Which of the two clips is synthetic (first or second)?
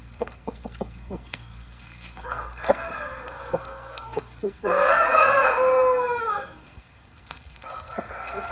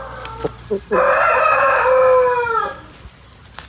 first